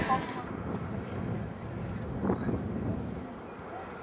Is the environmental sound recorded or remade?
recorded